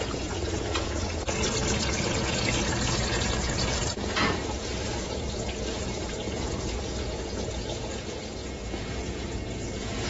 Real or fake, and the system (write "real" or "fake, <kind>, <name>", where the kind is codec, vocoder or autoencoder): fake, vocoder, Vocos